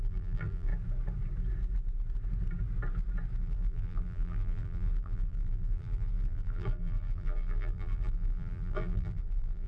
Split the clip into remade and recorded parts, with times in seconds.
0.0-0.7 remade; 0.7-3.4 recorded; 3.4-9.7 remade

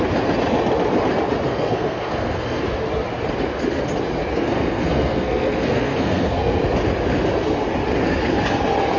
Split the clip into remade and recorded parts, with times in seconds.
0.0-1.5 recorded; 1.5-2.6 remade; 2.6-4.3 recorded; 4.3-6.6 remade; 6.6-9.0 recorded

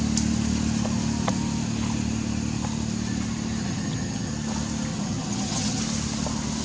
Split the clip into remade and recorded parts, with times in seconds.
0.0-3.6 recorded; 3.6-4.3 remade; 4.3-4.9 recorded; 4.9-5.8 remade; 5.8-6.6 recorded

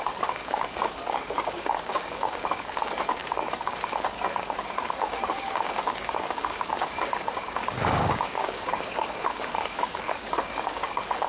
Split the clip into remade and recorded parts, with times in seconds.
0.0-11.3 remade